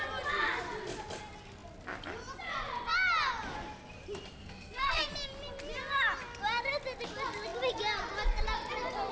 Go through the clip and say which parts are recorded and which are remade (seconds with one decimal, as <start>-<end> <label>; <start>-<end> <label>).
0.0-4.4 recorded; 4.4-5.1 remade; 5.1-9.1 recorded